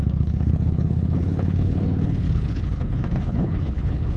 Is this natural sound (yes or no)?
no